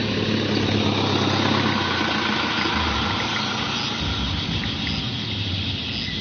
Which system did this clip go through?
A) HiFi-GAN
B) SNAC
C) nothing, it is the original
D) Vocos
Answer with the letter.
C